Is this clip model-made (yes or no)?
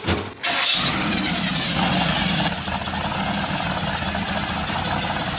no